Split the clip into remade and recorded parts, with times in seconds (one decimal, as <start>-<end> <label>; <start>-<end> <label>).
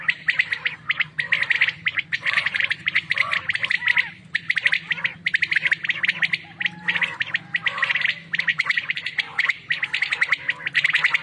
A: 0.0-1.9 recorded; 1.9-3.3 remade; 3.3-8.5 recorded; 8.5-9.6 remade; 9.6-11.2 recorded